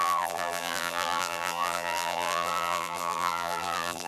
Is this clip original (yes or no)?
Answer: no